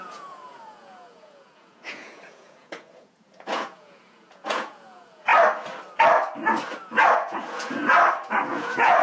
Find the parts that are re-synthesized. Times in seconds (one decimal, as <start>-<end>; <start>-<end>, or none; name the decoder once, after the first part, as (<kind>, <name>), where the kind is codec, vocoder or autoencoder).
0.0-5.3 (vocoder, Vocos); 7.1-7.8; 8.5-9.0